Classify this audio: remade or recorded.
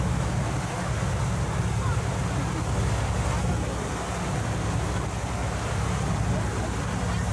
recorded